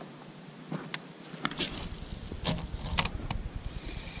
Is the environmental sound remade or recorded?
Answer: recorded